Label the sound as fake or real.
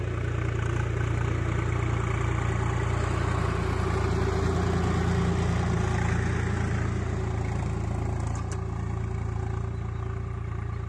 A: real